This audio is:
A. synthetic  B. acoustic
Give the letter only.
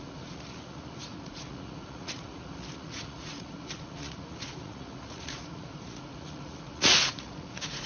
A